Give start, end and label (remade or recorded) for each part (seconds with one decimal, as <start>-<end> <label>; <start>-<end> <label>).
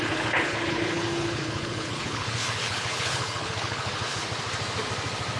0.0-4.2 remade; 4.2-5.4 recorded